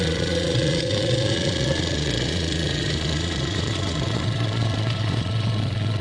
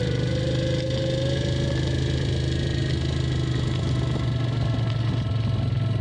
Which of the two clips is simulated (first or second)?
first